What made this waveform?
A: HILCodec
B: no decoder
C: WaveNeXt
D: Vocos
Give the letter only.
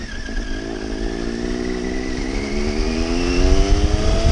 B